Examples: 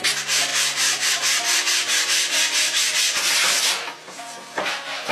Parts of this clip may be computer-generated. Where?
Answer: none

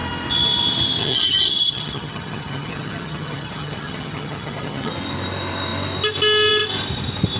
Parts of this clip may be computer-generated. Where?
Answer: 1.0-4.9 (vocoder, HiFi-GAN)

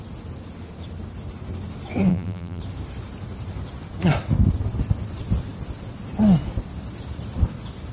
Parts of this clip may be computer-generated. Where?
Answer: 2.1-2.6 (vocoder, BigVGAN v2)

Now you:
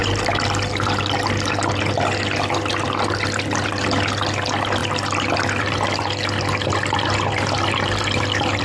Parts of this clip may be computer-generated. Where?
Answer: none

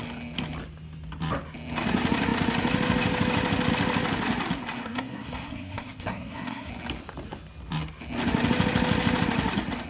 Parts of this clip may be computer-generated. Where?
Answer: 4.8-6.7 (codec, SNAC)

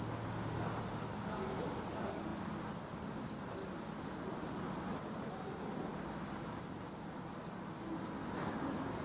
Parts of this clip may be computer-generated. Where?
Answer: none